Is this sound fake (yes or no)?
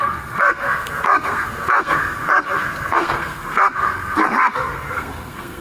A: yes